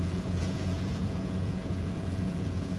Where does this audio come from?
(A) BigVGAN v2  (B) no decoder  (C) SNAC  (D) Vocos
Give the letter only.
D